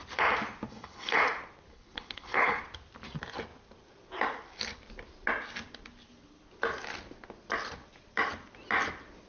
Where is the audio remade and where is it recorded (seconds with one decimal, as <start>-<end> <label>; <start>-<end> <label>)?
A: 0.0-0.7 recorded; 0.7-1.2 remade; 1.2-1.7 recorded; 1.7-2.6 remade; 2.6-9.3 recorded